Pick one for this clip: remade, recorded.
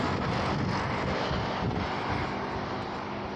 recorded